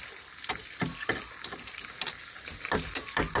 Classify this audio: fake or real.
real